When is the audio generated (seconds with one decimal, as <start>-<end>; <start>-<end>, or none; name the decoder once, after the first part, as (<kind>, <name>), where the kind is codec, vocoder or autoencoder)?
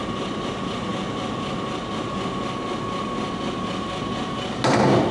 none